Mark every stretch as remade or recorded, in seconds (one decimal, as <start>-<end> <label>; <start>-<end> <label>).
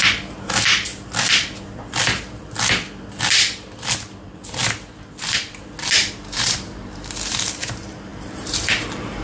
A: 0.0-0.9 remade; 0.9-6.1 recorded; 6.1-9.2 remade